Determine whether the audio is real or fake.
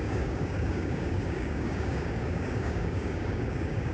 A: fake